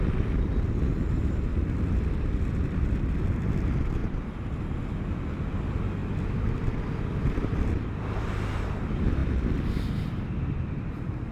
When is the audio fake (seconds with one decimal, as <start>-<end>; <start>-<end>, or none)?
none